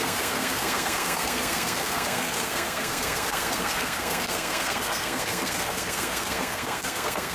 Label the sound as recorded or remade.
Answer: remade